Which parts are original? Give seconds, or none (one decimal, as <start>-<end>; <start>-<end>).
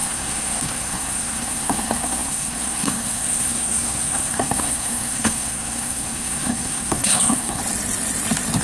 7.6-8.6